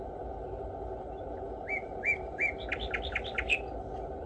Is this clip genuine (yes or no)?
yes